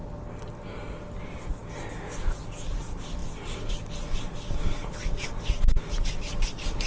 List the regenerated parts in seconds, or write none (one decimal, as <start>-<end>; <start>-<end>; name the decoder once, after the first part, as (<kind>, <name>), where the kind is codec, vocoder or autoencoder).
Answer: none